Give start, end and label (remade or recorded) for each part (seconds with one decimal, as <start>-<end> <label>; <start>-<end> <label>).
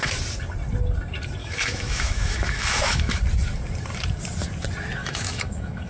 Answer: 0.0-1.4 recorded; 1.4-3.2 remade; 3.2-5.0 recorded; 5.0-5.9 remade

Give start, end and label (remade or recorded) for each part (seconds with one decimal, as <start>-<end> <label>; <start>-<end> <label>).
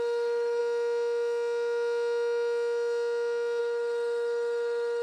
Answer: 0.0-0.6 remade; 0.6-3.6 recorded; 3.6-5.0 remade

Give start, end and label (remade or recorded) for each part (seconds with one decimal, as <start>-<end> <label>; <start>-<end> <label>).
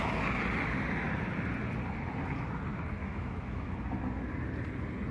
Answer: 0.0-3.0 recorded; 3.0-3.8 remade; 3.8-5.1 recorded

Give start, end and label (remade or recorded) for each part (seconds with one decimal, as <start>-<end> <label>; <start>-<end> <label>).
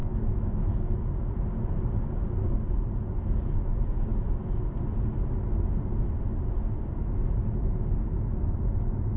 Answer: 0.0-0.9 remade; 0.9-9.2 recorded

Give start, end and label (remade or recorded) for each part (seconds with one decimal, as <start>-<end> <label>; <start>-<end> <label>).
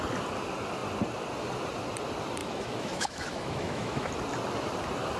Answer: 0.0-2.4 recorded; 2.4-4.1 remade; 4.1-5.2 recorded